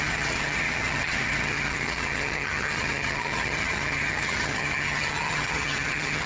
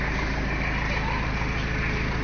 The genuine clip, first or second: second